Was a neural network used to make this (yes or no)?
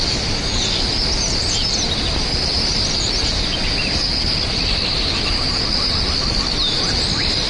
no